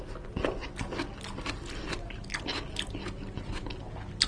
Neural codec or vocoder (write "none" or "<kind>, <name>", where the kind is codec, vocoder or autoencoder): none